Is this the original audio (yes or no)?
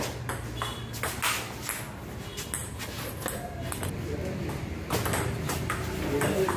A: yes